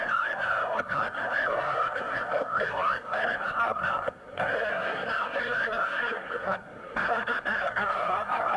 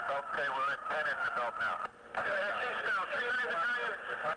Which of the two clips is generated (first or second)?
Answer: first